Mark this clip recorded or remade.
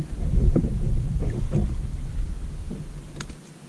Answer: recorded